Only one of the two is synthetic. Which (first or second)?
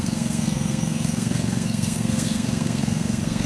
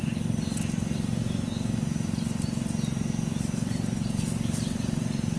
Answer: first